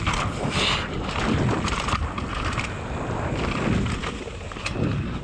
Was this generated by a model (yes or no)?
no